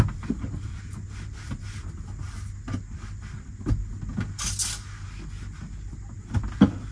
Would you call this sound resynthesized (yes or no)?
no